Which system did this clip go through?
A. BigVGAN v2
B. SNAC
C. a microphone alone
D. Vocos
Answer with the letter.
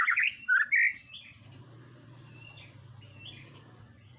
C